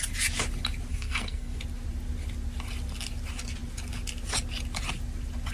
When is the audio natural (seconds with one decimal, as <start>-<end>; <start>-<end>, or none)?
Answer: 0.0-0.9; 1.6-5.5

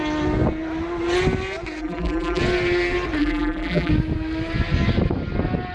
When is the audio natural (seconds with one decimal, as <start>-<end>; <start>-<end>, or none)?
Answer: 0.0-1.8; 2.4-3.2; 3.9-5.7

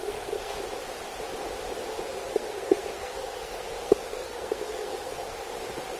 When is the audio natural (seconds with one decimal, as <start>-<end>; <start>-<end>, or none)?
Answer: 0.6-1.9; 5.5-6.0

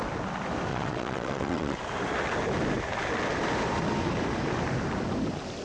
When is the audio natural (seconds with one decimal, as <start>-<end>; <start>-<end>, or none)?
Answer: 0.0-0.7; 1.8-5.6

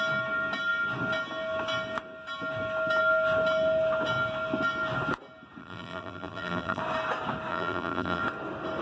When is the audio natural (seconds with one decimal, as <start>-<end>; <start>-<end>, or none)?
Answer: 0.0-5.6; 6.8-7.5; 8.2-8.8